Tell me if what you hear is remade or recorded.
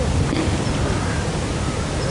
recorded